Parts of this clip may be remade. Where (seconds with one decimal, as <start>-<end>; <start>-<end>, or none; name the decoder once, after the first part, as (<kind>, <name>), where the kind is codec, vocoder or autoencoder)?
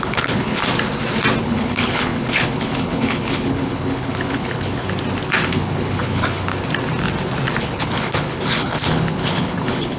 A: 0.0-0.6 (codec, HILCodec); 1.4-4.8; 5.5-6.5; 7.6-10.0